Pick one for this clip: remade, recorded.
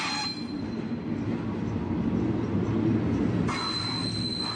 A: recorded